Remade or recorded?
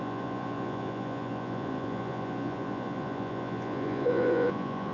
remade